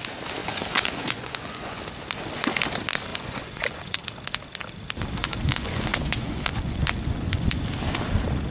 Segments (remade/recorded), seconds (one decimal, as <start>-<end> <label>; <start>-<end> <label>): 0.0-0.4 recorded; 0.4-1.8 remade; 1.8-3.1 recorded; 3.1-4.0 remade; 4.0-5.2 recorded; 5.2-7.6 remade; 7.6-8.5 recorded